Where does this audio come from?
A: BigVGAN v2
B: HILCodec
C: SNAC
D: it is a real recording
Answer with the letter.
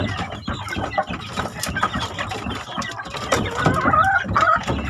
A